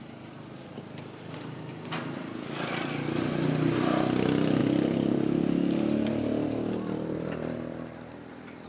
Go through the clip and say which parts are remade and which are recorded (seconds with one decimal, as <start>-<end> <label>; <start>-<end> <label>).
0.0-4.6 recorded; 4.6-8.7 remade